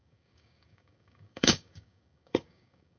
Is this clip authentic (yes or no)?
no